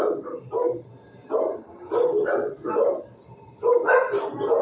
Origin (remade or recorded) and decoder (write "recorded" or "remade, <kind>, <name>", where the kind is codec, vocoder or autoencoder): remade, vocoder, BigVGAN v2